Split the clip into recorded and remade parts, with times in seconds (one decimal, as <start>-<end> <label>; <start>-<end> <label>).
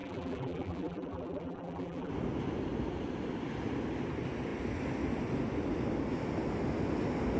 0.0-2.1 remade; 2.1-7.4 recorded